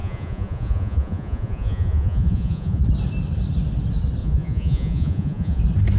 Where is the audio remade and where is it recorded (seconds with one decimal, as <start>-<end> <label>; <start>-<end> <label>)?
0.0-2.8 remade; 2.8-4.2 recorded; 4.2-5.6 remade; 5.6-6.0 recorded